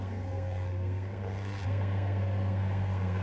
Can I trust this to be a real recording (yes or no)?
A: no